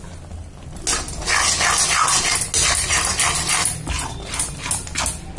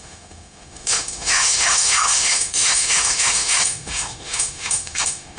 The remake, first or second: second